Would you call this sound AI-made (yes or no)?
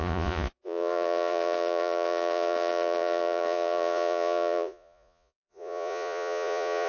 yes